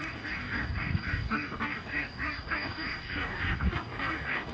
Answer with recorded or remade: remade